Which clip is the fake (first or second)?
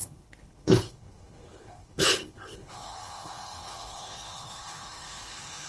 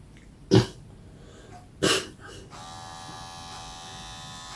first